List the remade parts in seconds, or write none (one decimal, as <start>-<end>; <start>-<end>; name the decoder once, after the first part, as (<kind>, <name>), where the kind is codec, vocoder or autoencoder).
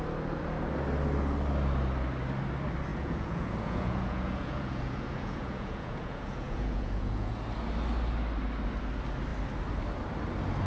2.9-7.3 (vocoder, Vocos)